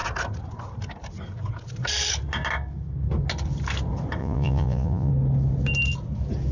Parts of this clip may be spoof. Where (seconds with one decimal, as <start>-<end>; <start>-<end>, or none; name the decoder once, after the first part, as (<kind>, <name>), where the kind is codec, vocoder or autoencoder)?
4.2-5.1 (vocoder, Vocos)